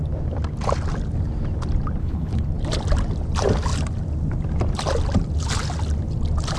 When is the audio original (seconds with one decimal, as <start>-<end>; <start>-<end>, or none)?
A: 0.0-2.0; 2.5-6.6